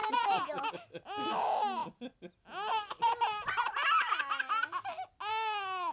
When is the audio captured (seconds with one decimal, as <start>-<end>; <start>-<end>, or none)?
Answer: 0.7-5.9